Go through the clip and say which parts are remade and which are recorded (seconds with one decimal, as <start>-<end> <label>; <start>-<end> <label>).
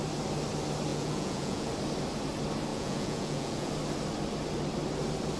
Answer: 0.0-0.9 recorded; 0.9-1.7 remade; 1.7-2.7 recorded; 2.7-3.7 remade; 3.7-5.4 recorded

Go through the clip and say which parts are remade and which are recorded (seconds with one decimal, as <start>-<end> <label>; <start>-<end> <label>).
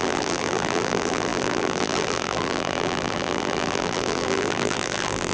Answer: 0.0-5.3 remade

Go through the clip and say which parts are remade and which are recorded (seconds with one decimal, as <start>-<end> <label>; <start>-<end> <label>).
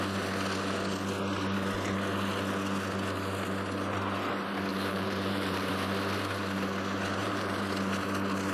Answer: 0.0-4.7 recorded; 4.7-5.7 remade; 5.7-7.2 recorded; 7.2-7.7 remade; 7.7-8.5 recorded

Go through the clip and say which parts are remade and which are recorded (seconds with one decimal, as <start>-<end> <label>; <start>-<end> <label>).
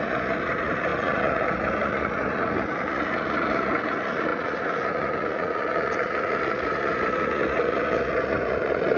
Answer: 0.0-9.0 remade